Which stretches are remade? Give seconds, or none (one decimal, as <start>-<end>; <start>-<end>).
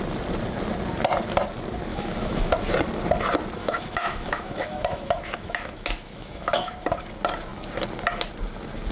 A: 1.9-2.5; 3.6-6.7